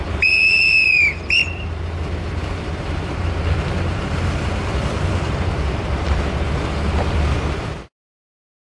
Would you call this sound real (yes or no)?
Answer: no